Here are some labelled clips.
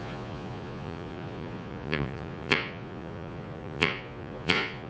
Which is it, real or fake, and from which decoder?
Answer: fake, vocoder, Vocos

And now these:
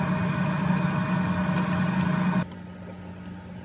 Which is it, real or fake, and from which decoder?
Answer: real